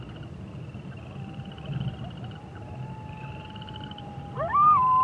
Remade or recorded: remade